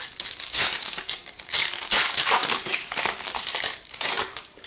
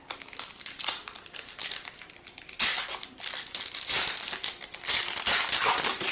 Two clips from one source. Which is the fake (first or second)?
first